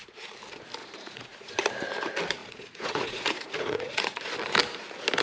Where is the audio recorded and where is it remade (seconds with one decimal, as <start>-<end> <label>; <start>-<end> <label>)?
0.0-0.8 recorded; 0.8-1.5 remade; 1.5-2.4 recorded; 2.4-4.3 remade; 4.3-5.2 recorded